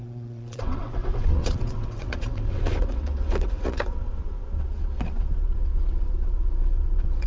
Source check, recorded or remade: remade